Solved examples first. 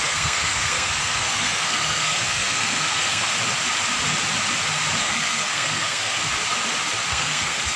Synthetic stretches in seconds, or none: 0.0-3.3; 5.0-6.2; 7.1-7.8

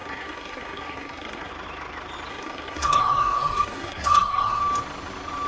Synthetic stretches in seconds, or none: 0.0-1.5; 2.3-4.6

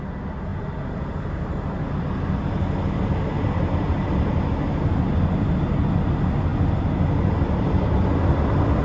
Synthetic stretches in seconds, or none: none

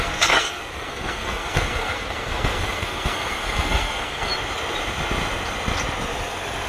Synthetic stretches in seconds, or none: 0.0-4.3

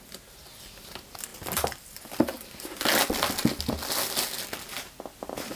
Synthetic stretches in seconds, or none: none